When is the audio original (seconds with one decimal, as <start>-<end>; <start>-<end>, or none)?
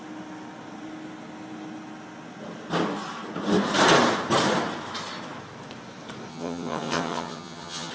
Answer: 0.0-6.3